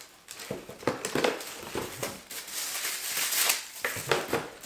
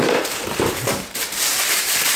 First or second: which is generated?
second